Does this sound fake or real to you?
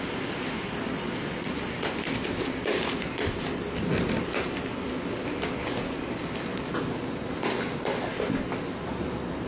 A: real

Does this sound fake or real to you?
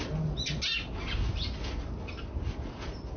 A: real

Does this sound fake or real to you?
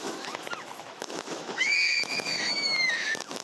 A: fake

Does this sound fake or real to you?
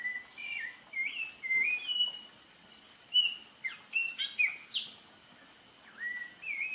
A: real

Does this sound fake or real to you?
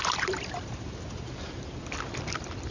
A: real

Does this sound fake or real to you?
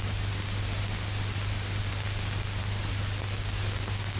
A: real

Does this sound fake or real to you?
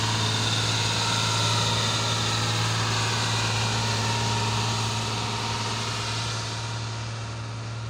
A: real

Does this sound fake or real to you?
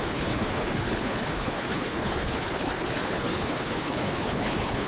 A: fake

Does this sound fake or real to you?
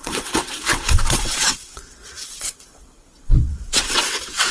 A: fake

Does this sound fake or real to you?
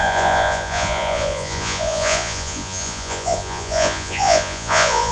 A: fake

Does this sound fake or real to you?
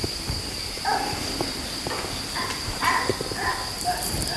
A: real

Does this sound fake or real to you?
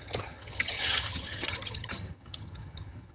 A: fake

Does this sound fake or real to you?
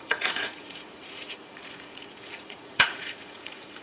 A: fake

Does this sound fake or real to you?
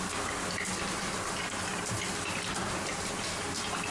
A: real